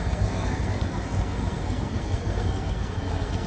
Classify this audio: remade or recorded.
remade